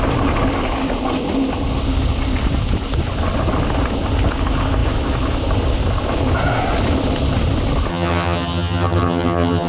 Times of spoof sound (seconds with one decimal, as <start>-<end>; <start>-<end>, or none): 7.9-9.7